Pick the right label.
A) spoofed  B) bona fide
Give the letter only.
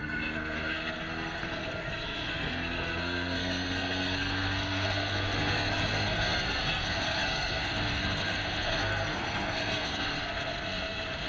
A